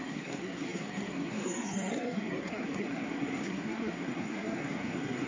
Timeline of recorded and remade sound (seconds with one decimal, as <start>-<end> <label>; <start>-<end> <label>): 0.0-5.3 remade